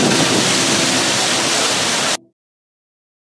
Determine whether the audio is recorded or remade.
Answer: recorded